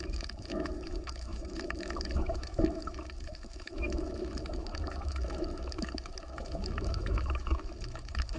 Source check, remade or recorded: remade